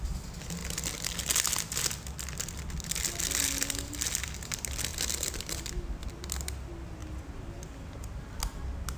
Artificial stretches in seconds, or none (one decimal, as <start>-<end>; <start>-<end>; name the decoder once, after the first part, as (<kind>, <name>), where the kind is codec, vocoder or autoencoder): none